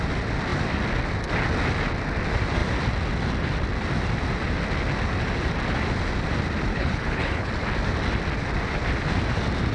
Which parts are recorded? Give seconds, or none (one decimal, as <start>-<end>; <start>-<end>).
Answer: 0.0-6.7; 7.5-9.7